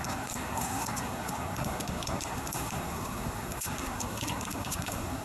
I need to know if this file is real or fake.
fake